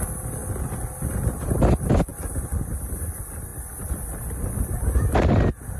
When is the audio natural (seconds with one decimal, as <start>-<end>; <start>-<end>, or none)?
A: 0.0-3.5; 5.1-5.8